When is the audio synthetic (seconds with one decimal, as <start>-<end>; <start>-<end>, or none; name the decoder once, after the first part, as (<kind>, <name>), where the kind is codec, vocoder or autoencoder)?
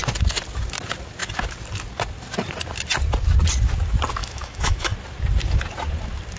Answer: 4.2-4.9 (autoencoder, DAC-VAE)